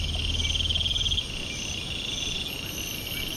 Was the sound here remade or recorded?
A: recorded